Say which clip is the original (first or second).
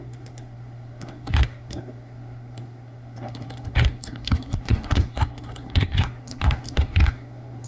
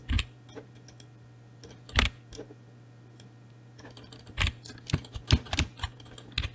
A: second